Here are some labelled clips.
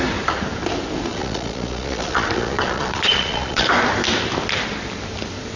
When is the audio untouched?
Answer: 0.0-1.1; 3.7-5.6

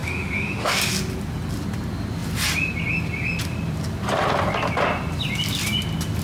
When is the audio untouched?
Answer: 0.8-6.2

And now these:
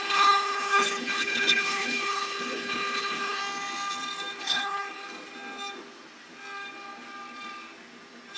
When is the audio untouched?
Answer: 3.4-4.4; 5.0-8.4